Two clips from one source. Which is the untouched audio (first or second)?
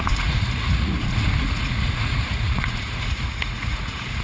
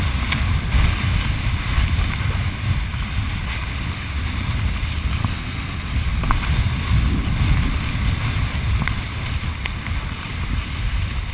second